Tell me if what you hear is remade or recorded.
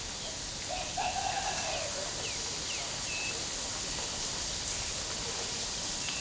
recorded